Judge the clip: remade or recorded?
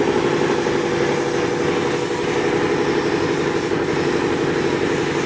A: recorded